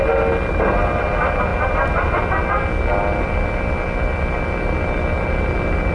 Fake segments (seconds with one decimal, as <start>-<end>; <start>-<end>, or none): none